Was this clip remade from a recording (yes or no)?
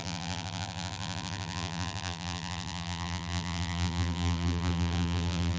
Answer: yes